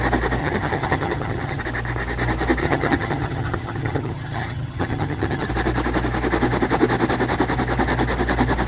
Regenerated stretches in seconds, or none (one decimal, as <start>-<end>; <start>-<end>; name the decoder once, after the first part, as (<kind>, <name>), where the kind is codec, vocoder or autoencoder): 0.4-1.6 (vocoder, HiFi-GAN); 2.6-5.5